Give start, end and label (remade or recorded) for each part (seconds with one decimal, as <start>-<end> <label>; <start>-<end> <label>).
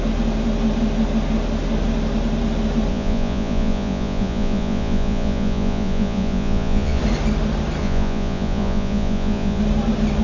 0.0-2.9 recorded; 2.9-7.0 remade; 7.0-7.8 recorded; 7.8-9.6 remade; 9.6-10.2 recorded